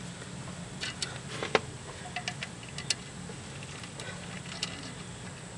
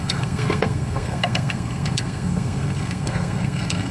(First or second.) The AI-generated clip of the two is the second